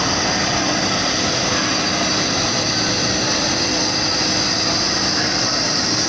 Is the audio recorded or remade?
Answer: recorded